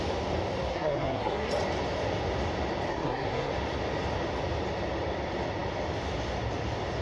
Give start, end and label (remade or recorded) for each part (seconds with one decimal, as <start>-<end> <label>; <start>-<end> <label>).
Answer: 0.0-0.7 recorded; 0.7-1.5 remade; 1.5-2.9 recorded; 2.9-3.5 remade; 3.5-7.0 recorded

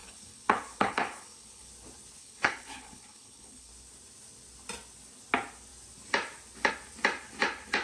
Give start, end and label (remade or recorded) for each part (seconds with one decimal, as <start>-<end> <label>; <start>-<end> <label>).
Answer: 0.0-1.7 remade; 1.7-2.2 recorded; 2.2-3.7 remade; 3.7-7.8 recorded

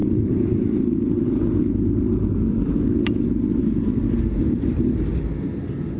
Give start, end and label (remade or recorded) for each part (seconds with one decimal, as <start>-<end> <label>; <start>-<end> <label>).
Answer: 0.0-6.0 recorded

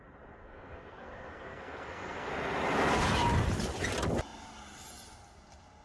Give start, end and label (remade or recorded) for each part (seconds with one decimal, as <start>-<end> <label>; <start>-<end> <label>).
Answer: 0.0-0.4 recorded; 0.4-2.3 remade; 2.3-5.8 recorded

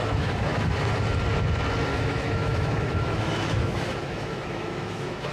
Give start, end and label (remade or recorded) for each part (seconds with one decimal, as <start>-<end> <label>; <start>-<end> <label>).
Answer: 0.0-0.5 remade; 0.5-1.9 recorded; 1.9-5.3 remade

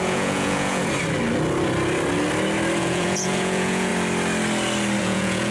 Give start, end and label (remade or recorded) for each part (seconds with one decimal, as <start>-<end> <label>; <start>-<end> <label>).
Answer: 0.0-0.8 remade; 0.8-2.8 recorded; 2.8-3.9 remade; 3.9-5.0 recorded; 5.0-5.5 remade

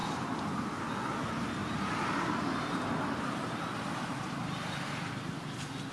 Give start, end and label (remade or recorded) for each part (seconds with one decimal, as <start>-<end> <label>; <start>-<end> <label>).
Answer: 0.0-0.9 remade; 0.9-1.6 recorded; 1.6-5.1 remade; 5.1-5.9 recorded